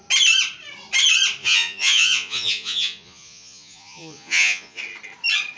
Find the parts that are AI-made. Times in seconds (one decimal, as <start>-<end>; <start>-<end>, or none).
1.4-4.8